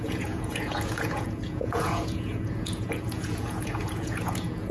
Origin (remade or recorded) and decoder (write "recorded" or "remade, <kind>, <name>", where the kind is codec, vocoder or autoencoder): remade, vocoder, Vocos